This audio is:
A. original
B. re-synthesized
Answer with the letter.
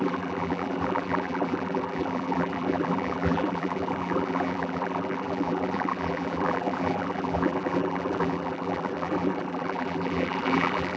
B